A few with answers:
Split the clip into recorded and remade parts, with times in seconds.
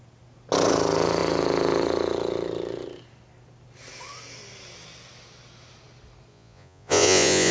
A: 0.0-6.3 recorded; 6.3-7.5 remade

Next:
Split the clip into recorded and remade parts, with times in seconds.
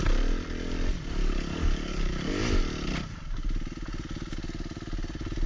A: 0.0-1.2 recorded; 1.2-2.3 remade; 2.3-5.5 recorded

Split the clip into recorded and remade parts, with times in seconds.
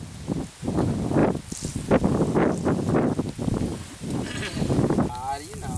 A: 0.0-3.7 recorded; 3.7-4.4 remade; 4.4-5.8 recorded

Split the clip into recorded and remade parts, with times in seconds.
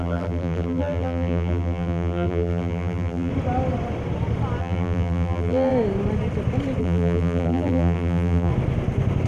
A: 0.0-3.3 remade; 3.3-4.6 recorded; 4.6-5.7 remade; 5.7-6.8 recorded; 6.8-8.5 remade; 8.5-9.3 recorded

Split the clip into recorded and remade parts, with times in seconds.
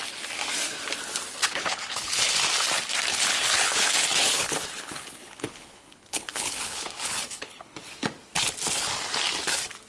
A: 0.0-1.4 recorded; 1.4-2.3 remade; 2.3-3.1 recorded; 3.1-7.9 remade; 7.9-9.9 recorded